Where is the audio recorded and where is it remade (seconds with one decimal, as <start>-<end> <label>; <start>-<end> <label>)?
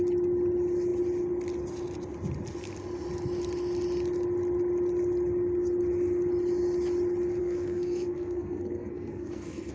0.0-7.4 recorded; 7.4-9.7 remade